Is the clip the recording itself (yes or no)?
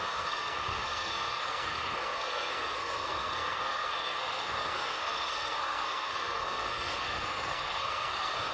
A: no